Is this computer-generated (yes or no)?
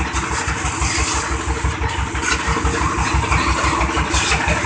no